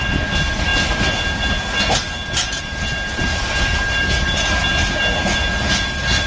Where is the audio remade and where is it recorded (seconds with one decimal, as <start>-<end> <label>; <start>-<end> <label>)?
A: 0.0-6.3 recorded